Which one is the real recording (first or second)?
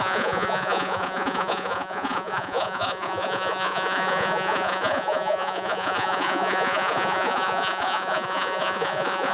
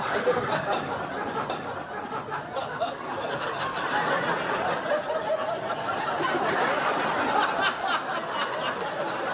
second